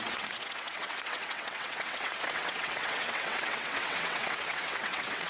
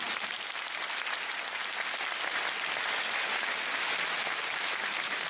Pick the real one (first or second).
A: second